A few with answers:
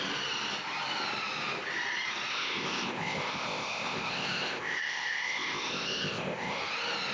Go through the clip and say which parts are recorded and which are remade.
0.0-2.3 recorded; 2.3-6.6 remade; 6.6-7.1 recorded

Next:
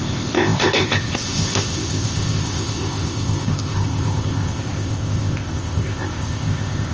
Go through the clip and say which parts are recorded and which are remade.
0.0-6.9 remade